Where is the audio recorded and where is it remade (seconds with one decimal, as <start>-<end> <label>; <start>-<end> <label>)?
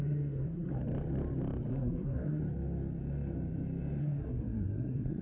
0.0-0.8 remade; 0.8-1.7 recorded; 1.7-2.4 remade; 2.4-4.0 recorded; 4.0-5.2 remade